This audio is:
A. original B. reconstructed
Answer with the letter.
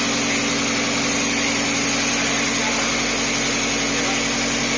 A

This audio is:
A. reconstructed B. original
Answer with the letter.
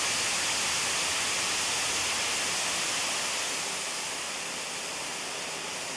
B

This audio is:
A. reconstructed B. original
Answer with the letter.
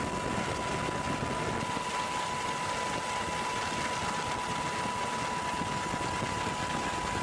B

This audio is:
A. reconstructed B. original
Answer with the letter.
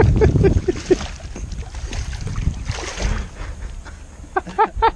B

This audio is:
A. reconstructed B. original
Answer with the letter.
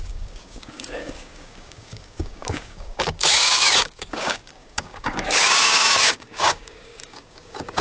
A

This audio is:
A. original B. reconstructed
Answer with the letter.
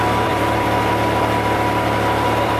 B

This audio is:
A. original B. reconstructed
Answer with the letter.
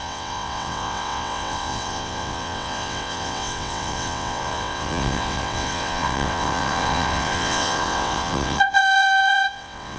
B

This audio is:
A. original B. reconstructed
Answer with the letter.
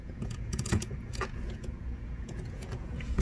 B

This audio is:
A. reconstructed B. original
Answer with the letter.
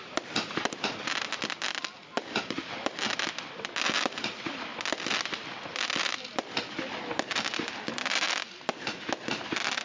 B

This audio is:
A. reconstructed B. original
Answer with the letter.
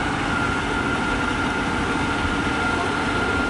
B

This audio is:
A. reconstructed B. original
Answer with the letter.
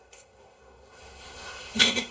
A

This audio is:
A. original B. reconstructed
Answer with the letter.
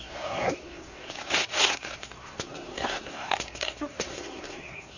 B